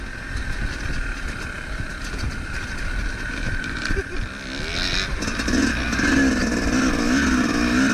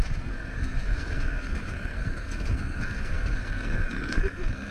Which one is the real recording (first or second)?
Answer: first